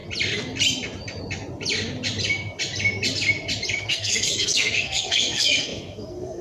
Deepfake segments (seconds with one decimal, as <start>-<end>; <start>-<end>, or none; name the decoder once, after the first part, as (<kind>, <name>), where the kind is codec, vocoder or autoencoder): 3.8-6.4 (codec, SNAC)